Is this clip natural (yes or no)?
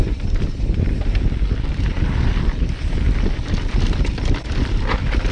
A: yes